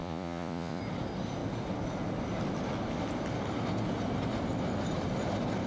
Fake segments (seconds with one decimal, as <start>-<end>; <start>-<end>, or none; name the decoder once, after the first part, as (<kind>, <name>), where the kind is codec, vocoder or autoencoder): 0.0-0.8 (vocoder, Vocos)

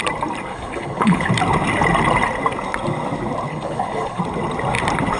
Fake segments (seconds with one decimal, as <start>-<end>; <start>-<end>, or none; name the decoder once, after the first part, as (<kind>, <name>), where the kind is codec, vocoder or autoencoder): 0.5-1.3 (codec, HILCodec); 3.5-4.2

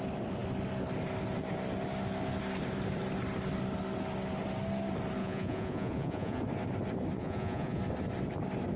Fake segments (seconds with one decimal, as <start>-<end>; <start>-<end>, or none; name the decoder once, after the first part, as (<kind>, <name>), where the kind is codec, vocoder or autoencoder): 5.2-6.4 (vocoder, Vocos); 7.2-7.8

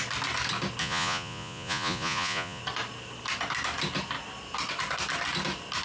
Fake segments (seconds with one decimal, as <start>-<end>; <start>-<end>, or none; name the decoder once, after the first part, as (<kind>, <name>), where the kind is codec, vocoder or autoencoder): 0.8-2.6 (vocoder, Vocos)

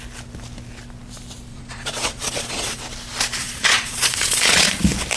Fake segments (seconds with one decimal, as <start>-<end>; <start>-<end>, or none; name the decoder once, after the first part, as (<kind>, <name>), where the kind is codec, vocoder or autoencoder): 1.5-2.8 (vocoder, Vocos); 3.4-4.8

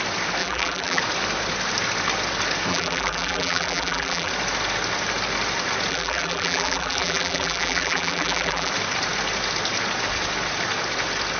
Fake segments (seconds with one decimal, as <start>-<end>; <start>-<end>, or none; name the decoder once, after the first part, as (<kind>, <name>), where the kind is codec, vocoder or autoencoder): 0.4-1.0 (vocoder, BigVGAN v2); 2.7-4.3; 5.9-8.7

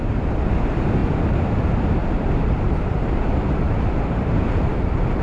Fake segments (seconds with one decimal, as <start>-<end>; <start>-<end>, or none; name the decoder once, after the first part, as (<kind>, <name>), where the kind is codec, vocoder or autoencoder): 2.0-5.2 (vocoder, BigVGAN v2)

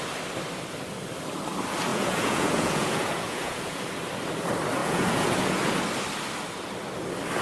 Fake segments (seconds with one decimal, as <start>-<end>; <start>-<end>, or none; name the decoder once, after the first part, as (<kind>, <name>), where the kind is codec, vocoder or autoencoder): 1.9-3.8 (vocoder, Vocos); 4.8-5.8